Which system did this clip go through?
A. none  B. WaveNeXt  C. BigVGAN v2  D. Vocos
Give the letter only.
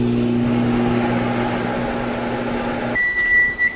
A